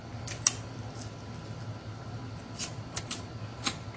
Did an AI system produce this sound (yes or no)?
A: no